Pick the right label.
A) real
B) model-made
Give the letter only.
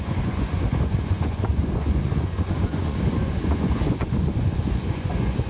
B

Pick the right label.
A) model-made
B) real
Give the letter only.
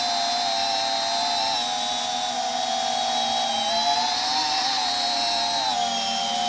B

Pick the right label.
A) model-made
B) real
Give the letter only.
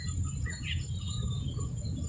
A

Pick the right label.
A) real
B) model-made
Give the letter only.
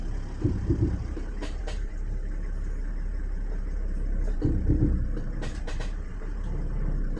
B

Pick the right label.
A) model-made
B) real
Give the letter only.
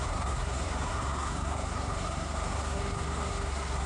A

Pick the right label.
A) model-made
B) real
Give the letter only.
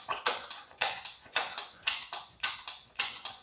A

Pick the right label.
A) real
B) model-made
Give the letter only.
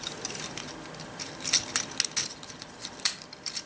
A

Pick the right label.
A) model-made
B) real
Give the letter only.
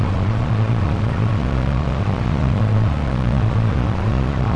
A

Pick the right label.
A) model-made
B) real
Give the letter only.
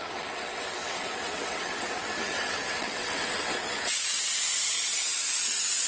A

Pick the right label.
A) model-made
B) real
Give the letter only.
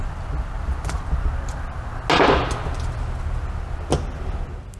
B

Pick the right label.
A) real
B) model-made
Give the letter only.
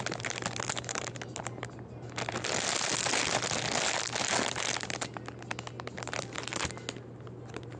A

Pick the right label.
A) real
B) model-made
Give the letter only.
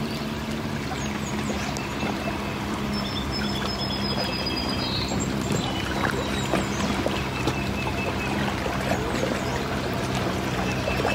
A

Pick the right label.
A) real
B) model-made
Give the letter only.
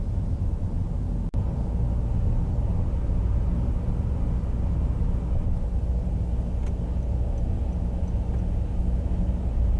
A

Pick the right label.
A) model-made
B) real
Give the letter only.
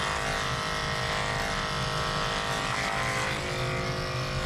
B